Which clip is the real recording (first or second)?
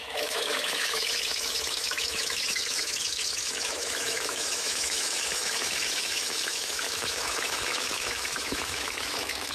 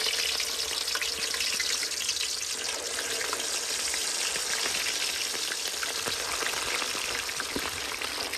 second